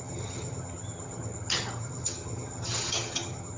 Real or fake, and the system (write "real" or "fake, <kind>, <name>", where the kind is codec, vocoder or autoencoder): fake, vocoder, HiFi-GAN